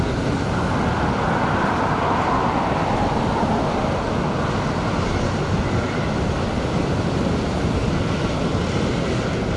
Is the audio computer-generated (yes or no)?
no